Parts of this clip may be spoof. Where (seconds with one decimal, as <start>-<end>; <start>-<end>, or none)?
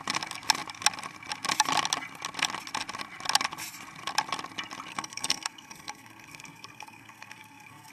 4.9-7.9